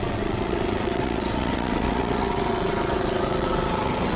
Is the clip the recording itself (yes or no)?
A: no